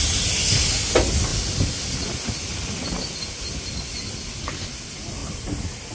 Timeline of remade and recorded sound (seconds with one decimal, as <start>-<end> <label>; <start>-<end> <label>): 0.0-5.9 recorded